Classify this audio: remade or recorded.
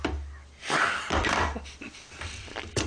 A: remade